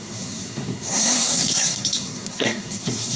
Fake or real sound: fake